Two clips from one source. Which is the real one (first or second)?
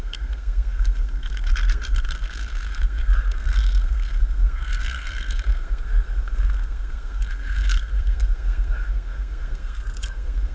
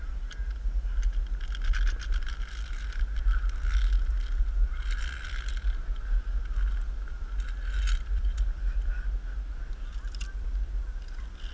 second